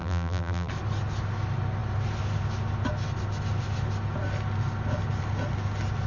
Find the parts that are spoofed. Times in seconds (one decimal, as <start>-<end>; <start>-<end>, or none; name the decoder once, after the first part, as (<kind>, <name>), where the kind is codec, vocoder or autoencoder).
0.0-0.7 (vocoder, BigVGAN v2)